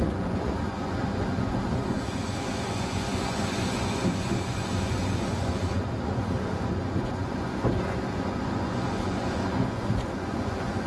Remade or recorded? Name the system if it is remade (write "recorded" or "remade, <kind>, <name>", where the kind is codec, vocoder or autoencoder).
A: remade, vocoder, Vocos